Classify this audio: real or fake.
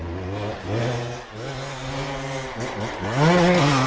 real